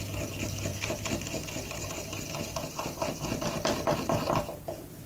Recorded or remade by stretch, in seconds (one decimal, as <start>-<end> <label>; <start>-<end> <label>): 0.0-0.7 recorded; 0.7-1.9 remade; 1.9-5.1 recorded